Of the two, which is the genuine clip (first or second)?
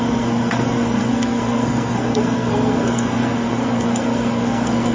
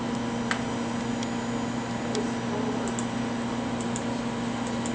second